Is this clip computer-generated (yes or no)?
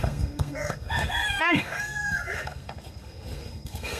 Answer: yes